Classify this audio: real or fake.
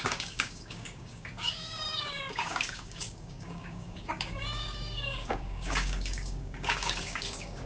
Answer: fake